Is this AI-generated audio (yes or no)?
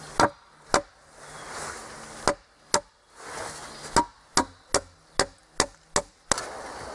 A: no